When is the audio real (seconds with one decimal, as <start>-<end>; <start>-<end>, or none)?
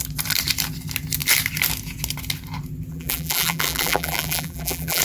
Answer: 0.0-2.9